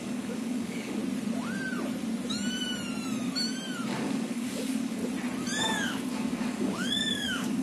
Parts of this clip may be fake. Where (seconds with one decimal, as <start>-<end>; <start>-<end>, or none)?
0.0-1.0; 3.9-5.0; 5.6-7.6

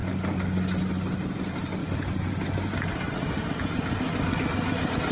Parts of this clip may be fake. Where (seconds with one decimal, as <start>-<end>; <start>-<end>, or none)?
none

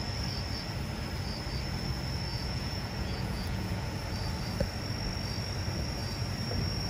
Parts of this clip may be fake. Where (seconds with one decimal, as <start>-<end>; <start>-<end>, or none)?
2.3-3.7

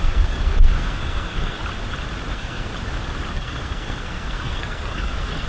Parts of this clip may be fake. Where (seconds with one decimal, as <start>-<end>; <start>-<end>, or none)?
0.0-1.6; 2.3-2.7; 3.3-5.5

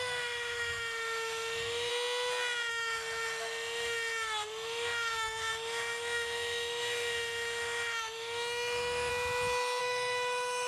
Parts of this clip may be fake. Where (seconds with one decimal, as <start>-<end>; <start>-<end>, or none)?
0.0-1.9; 2.7-9.1; 9.8-10.7

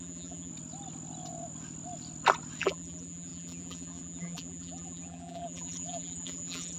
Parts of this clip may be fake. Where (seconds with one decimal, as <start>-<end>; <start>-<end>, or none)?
0.0-0.5; 2.6-6.8